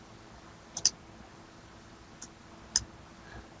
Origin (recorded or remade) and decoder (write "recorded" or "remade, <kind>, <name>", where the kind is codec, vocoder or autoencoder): recorded